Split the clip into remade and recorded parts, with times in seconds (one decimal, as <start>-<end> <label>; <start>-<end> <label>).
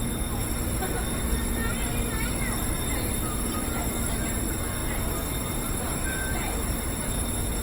0.0-7.6 recorded